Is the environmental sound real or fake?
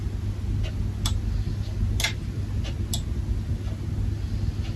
real